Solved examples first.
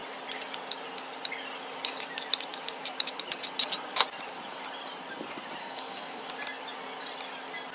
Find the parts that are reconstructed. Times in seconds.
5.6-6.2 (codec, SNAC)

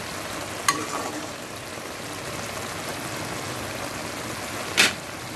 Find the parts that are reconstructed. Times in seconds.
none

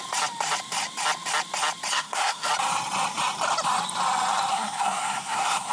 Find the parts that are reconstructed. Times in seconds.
1.9-2.5 (codec, SNAC); 4.5-5.7

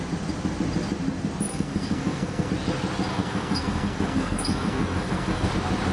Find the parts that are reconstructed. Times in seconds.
1.5-2.5 (codec, SNAC); 3.1-5.5

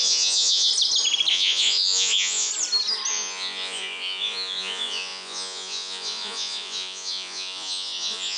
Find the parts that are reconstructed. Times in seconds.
0.0-0.7 (vocoder, Vocos); 1.3-2.5; 3.1-8.4